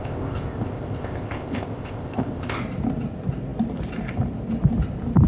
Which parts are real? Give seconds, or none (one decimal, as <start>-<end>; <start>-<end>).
2.6-5.3